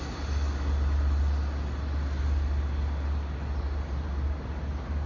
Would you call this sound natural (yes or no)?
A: yes